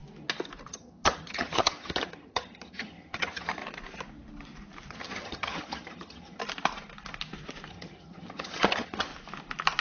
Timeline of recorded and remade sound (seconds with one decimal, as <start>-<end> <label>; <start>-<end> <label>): 0.0-0.7 recorded; 0.7-3.6 remade; 3.6-4.9 recorded; 4.9-6.4 remade; 6.4-7.7 recorded; 7.7-9.1 remade; 9.1-9.8 recorded